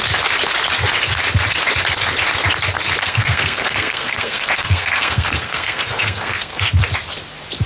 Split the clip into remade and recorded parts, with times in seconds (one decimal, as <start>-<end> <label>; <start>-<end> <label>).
0.0-3.0 recorded; 3.0-6.7 remade; 6.7-7.7 recorded